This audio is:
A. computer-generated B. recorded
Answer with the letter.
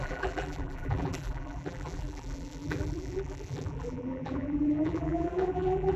A